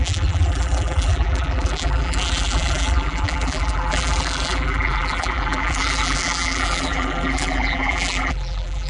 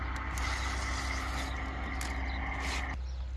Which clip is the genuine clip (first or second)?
second